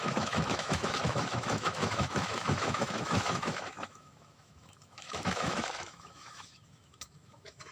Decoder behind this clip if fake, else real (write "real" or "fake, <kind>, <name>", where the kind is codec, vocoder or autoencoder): fake, autoencoder, DAC-VAE